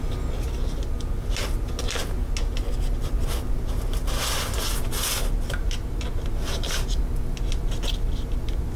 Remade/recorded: recorded